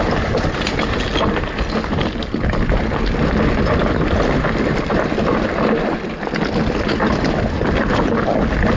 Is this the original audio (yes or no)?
yes